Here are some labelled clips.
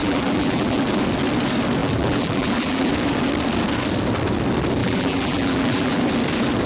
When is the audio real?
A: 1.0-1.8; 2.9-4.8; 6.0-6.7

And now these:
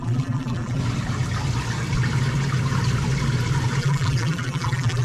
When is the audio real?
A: 0.8-3.8

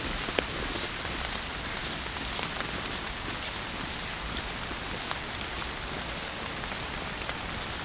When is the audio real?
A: 0.0-7.8

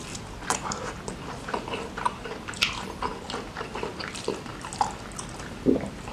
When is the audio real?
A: 3.1-4.1; 4.5-5.5